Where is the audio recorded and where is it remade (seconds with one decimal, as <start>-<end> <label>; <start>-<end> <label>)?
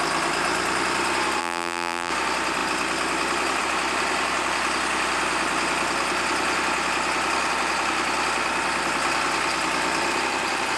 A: 0.0-1.4 recorded; 1.4-2.1 remade; 2.1-10.8 recorded